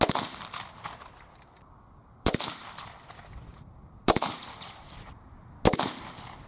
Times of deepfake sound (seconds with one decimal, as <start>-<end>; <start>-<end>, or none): 2.0-2.6; 3.5-5.4